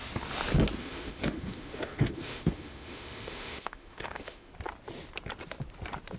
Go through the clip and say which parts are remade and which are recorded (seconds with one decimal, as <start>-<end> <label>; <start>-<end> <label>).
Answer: 0.0-0.8 recorded; 0.8-4.5 remade; 4.5-6.2 recorded